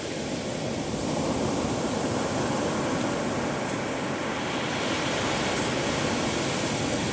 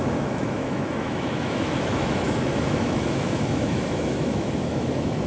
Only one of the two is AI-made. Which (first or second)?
second